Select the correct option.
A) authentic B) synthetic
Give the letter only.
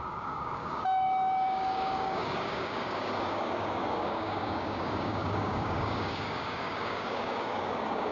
B